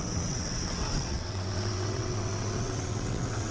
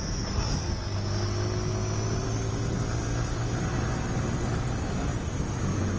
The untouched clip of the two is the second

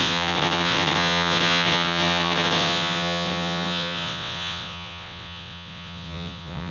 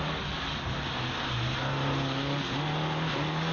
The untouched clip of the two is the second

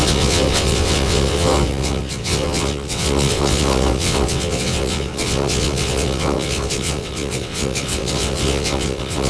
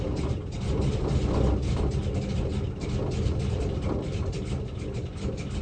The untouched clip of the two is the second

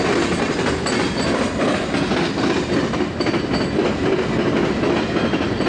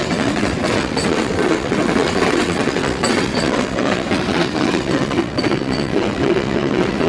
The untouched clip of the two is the first